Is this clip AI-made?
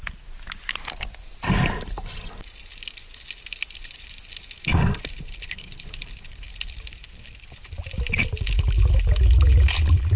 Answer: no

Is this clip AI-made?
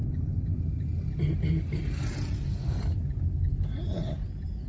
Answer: no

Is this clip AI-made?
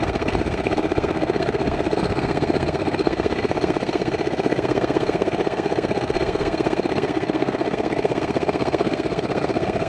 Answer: yes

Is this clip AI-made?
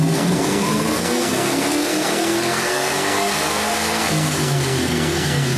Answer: yes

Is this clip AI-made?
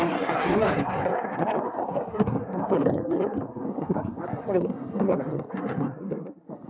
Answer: yes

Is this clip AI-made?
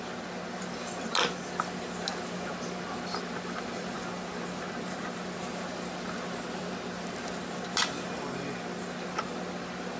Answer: no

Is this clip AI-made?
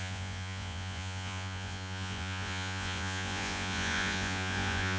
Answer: yes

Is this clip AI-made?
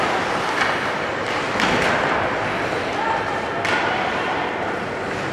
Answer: no